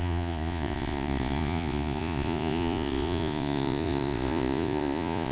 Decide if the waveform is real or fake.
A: fake